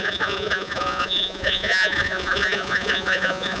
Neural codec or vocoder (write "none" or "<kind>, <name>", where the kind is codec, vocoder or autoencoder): vocoder, Vocos